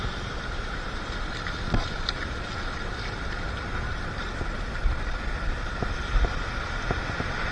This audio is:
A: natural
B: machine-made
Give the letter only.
A